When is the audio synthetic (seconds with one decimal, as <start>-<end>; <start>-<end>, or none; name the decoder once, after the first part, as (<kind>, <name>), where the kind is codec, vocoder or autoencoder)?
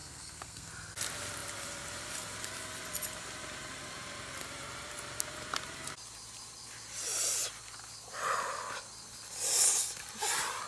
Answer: 0.0-0.7 (codec, SNAC)